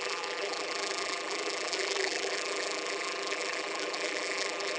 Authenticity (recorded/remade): remade